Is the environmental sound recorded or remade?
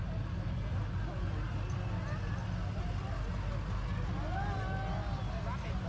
recorded